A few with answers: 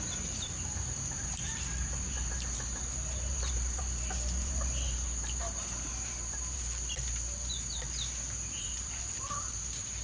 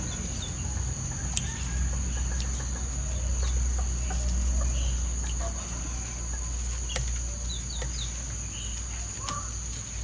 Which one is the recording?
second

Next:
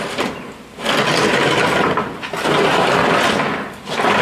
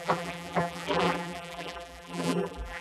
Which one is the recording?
first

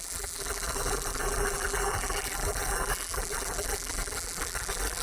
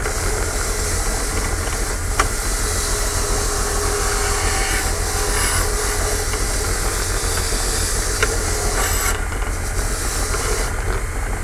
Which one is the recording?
second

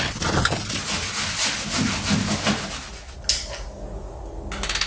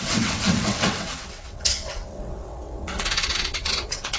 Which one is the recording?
first